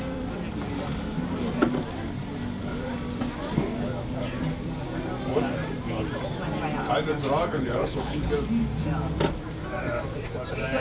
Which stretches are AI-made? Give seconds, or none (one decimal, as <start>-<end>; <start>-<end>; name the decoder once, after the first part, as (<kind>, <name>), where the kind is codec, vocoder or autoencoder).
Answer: 7.5-8.3 (codec, HILCodec)